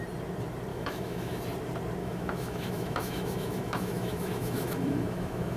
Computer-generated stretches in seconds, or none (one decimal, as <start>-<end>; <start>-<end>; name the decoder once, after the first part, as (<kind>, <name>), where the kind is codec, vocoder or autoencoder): 0.7-1.4 (autoencoder, DAC-VAE); 2.0-5.6